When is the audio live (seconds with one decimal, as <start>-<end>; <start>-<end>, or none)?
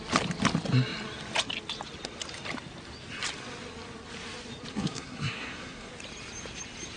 0.0-4.7; 5.9-7.0